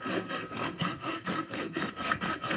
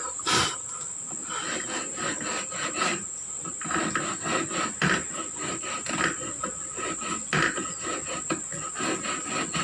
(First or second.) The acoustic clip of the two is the second